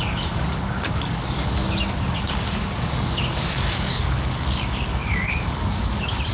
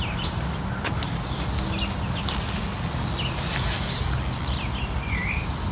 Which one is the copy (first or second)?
first